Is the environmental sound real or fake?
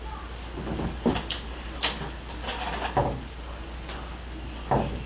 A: real